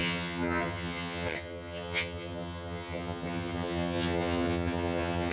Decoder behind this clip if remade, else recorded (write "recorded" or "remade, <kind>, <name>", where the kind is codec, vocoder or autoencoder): remade, vocoder, HiFi-GAN